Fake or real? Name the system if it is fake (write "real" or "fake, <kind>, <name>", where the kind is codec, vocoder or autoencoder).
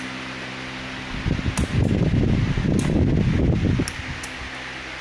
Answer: real